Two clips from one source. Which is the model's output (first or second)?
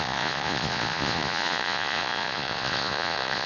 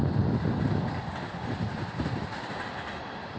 first